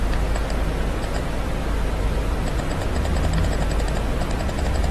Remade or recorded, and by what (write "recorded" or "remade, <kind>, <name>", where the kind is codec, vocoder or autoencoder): recorded